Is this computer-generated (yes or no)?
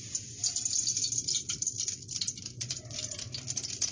no